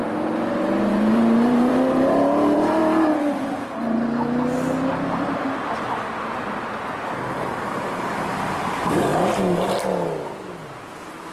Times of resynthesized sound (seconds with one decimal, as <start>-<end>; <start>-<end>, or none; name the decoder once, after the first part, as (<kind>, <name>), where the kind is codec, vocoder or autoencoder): 0.9-2.8 (vocoder, BigVGAN v2); 7.6-9.1; 10.9-11.3